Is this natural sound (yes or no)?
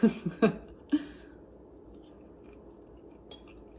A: yes